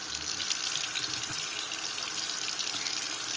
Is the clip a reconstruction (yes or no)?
no